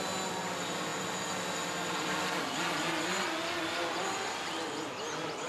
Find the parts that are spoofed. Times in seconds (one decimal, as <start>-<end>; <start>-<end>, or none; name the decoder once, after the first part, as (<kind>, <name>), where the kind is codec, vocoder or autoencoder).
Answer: none